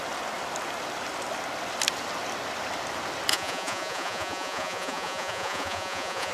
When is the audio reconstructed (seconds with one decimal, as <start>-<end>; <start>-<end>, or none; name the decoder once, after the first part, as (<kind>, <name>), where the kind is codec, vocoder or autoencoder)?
3.3-6.3 (vocoder, Vocos)